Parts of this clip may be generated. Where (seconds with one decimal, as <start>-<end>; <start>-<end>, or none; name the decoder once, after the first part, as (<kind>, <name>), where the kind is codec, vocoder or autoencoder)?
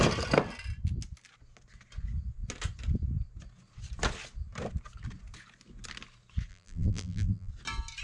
6.5-7.5 (vocoder, BigVGAN v2)